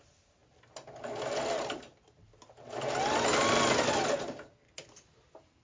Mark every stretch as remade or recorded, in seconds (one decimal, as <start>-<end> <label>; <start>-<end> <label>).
0.0-5.6 recorded